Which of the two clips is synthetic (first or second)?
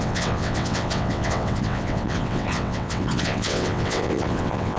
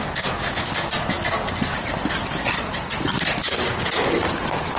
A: first